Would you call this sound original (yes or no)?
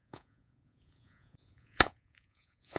no